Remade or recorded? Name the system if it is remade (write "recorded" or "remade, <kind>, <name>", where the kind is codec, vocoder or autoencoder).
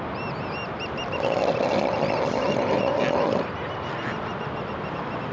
recorded